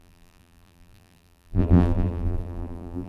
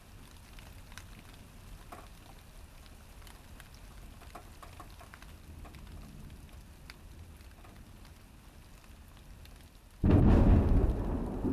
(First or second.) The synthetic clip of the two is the first